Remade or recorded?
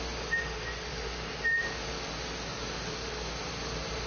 recorded